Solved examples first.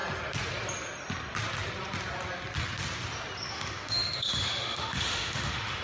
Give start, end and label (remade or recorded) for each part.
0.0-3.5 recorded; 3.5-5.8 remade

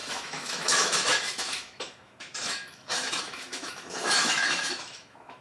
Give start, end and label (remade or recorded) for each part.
0.0-5.4 remade

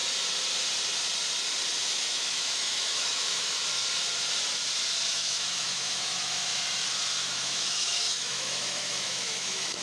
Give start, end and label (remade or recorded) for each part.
0.0-1.8 recorded; 1.8-3.6 remade; 3.6-5.1 recorded; 5.1-6.5 remade; 6.5-7.2 recorded; 7.2-9.8 remade

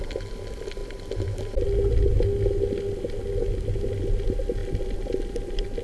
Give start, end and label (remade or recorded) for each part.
0.0-5.8 recorded

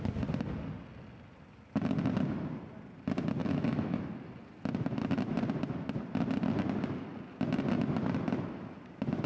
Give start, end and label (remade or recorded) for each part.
0.0-3.4 recorded; 3.4-4.0 remade; 4.0-9.3 recorded

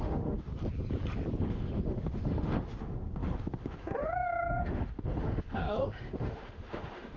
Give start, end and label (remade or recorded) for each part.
0.0-0.5 remade; 0.5-1.4 recorded; 1.4-7.2 remade

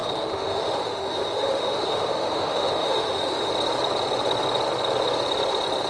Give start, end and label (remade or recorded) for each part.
0.0-3.5 remade; 3.5-5.9 recorded